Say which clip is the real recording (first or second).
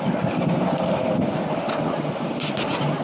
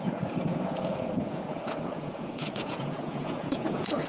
first